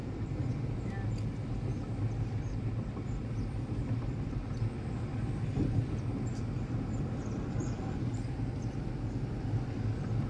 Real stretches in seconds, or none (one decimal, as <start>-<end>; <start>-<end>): 0.6-1.7; 3.0-10.3